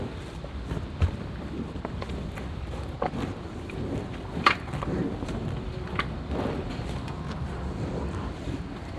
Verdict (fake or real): fake